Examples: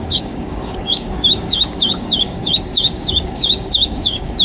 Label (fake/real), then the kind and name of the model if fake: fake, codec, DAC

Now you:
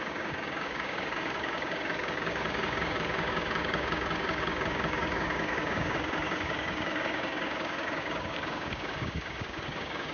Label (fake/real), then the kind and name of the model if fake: fake, codec, DAC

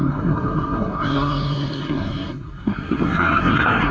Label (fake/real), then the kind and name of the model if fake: fake, codec, SNAC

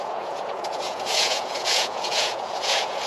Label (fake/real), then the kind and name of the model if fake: fake, vocoder, Vocos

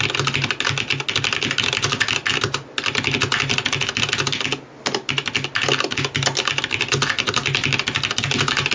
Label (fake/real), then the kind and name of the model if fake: real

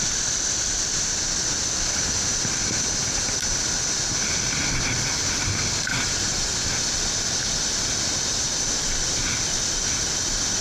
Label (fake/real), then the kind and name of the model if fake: real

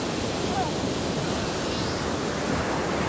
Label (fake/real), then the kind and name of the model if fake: real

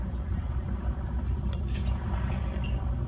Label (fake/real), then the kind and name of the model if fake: fake, vocoder, BigVGAN v2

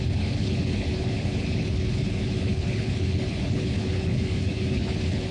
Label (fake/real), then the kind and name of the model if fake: fake, codec, HILCodec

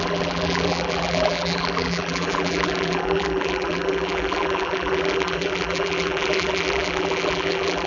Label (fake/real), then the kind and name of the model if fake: fake, vocoder, BigVGAN v2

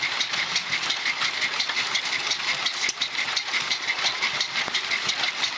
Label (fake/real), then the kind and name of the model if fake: real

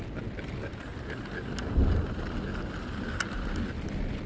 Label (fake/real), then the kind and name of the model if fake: real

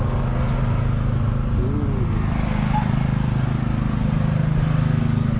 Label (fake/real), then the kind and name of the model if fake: real